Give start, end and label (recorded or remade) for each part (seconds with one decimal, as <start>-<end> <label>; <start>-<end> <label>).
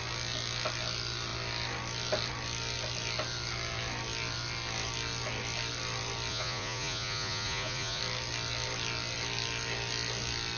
0.0-6.3 recorded; 6.3-8.0 remade; 8.0-10.6 recorded